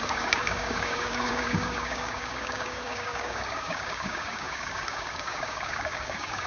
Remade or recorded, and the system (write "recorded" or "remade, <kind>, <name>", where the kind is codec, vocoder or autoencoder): remade, codec, DAC